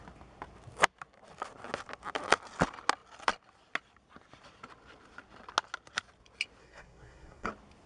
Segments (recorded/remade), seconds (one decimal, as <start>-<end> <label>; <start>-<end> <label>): 0.0-6.6 recorded; 6.6-7.5 remade; 7.5-7.9 recorded